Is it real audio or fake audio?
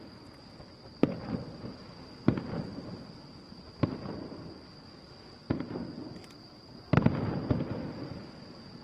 real